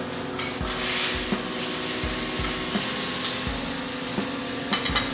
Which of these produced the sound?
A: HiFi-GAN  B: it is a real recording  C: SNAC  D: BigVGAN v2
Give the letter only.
B